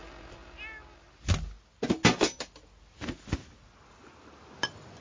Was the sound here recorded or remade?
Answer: recorded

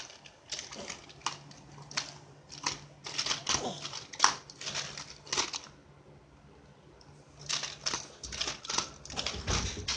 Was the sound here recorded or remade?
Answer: recorded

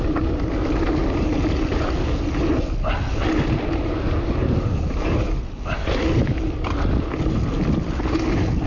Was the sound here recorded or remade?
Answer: recorded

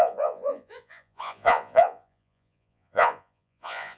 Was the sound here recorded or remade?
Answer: remade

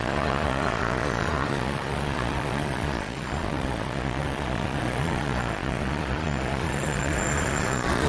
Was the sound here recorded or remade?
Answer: remade